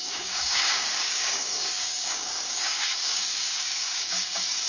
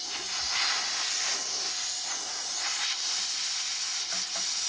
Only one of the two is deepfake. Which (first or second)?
first